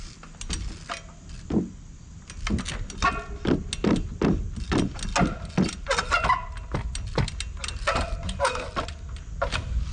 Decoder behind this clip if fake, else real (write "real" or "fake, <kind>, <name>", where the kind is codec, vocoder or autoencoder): real